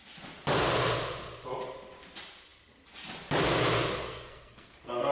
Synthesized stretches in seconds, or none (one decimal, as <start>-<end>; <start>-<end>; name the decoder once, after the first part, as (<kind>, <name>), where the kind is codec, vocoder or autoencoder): 4.0-5.1 (codec, SNAC)